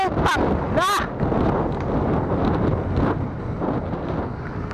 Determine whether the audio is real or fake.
real